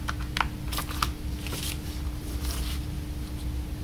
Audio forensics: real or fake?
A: real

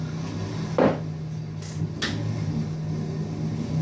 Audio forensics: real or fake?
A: real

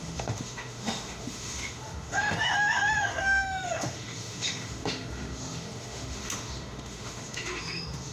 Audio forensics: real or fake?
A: fake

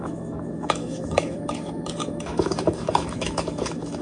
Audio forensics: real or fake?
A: fake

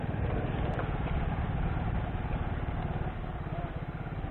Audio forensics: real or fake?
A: real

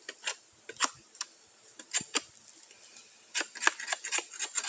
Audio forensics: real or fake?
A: real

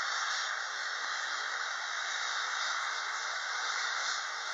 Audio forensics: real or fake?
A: fake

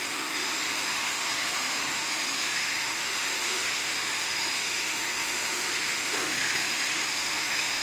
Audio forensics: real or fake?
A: fake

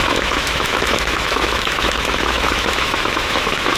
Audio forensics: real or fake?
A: fake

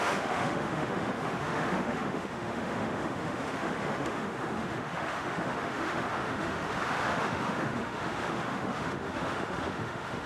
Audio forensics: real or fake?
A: fake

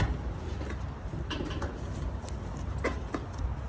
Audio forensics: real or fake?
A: real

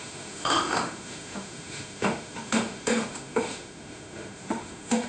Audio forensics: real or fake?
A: fake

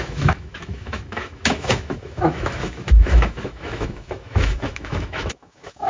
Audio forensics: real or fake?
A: fake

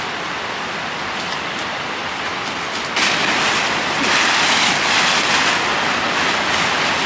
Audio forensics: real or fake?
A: real